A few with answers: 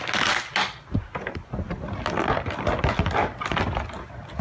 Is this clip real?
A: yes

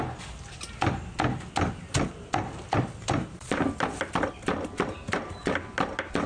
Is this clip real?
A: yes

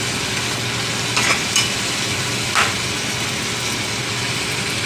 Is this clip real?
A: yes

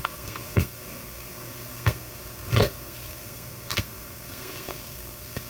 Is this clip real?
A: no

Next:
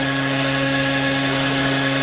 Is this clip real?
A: no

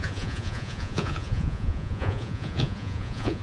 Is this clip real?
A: no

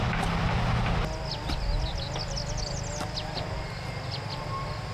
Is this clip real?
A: yes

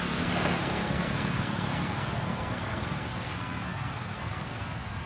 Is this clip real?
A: no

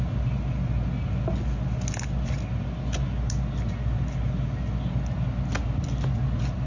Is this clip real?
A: yes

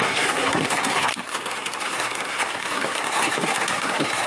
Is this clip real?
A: no